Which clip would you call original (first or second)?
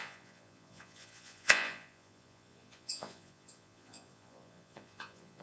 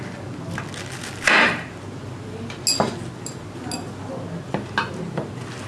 second